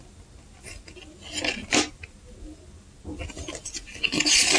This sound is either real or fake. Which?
real